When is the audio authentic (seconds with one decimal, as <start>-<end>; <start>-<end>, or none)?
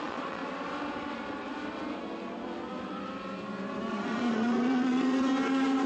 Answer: 0.4-3.9; 5.3-5.9